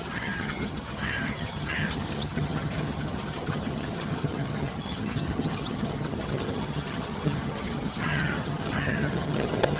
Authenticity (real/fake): fake